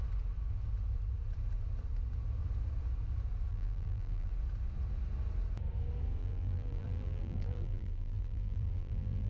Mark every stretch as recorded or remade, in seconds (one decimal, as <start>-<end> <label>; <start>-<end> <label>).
0.0-3.5 recorded; 3.5-4.3 remade; 4.3-6.2 recorded; 6.2-9.3 remade